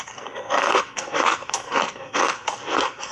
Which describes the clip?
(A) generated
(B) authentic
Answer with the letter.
A